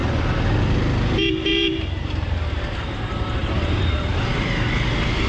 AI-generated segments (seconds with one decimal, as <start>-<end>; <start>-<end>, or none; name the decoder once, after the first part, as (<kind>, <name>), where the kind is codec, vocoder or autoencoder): 1.5-4.7 (vocoder, BigVGAN v2)